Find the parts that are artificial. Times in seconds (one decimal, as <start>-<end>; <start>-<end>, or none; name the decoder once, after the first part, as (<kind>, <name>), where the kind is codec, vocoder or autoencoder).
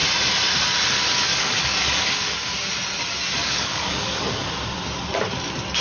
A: 1.3-2.5 (codec, DAC); 3.4-4.5